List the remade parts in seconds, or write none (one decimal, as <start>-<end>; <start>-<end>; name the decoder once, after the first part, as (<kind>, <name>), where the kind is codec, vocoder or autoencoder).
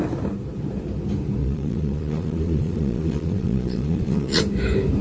1.4-4.4 (vocoder, Vocos)